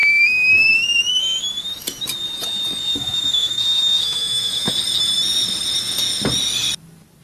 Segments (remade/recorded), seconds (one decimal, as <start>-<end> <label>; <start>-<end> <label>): 0.0-1.4 remade; 1.4-2.9 recorded; 2.9-4.7 remade; 4.7-7.2 recorded